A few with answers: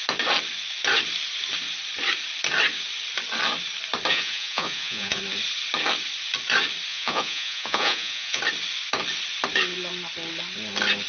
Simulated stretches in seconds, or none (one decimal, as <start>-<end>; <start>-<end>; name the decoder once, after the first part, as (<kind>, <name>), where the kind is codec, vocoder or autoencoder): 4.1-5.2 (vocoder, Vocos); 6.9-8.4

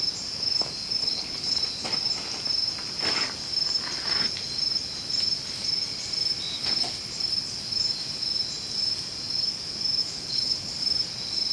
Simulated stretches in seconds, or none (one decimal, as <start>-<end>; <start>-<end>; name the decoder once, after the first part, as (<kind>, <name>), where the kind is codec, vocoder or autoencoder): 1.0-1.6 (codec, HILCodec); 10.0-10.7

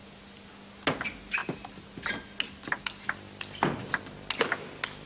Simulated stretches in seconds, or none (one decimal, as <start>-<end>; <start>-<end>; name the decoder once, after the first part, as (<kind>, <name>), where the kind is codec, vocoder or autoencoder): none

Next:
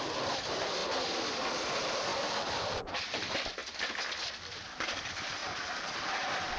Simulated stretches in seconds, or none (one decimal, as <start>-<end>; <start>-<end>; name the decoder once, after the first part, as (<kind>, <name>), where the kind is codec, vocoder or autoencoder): 0.0-0.8 (vocoder, BigVGAN v2); 1.7-3.6; 4.5-6.6

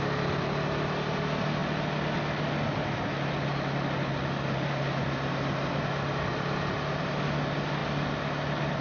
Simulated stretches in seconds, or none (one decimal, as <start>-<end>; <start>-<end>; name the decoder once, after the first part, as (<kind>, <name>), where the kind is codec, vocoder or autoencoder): none

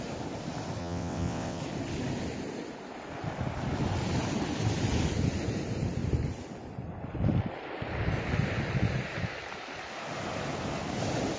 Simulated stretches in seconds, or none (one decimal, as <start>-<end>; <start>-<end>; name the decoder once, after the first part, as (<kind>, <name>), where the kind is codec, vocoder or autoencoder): 0.8-1.6 (vocoder, WaveNeXt)